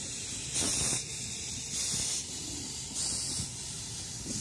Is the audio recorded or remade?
recorded